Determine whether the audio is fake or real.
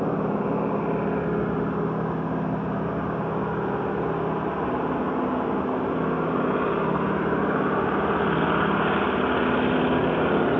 real